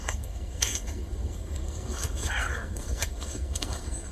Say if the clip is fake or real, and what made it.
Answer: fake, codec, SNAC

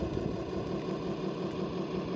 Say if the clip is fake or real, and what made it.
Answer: real